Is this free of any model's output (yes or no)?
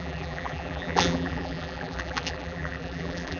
no